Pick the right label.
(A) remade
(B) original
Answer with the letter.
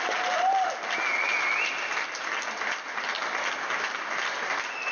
B